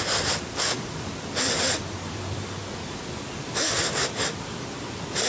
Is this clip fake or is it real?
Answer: fake